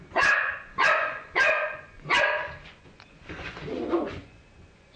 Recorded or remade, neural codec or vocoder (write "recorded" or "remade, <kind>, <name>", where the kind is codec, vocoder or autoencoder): remade, vocoder, Vocos